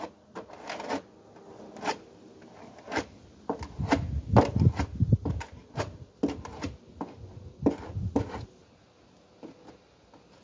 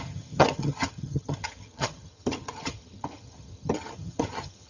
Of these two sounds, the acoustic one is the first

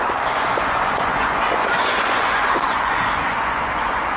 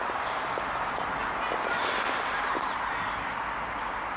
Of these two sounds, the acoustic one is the second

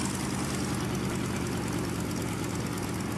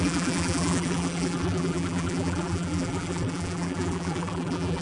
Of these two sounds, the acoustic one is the first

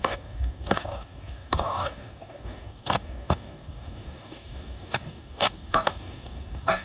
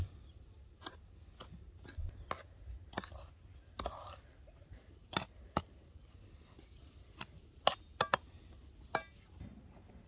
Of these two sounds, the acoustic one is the second